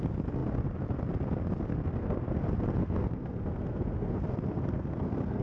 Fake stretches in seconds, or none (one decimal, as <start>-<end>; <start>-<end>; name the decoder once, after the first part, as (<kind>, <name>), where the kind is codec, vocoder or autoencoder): 1.7-2.4 (codec, SNAC); 2.8-5.4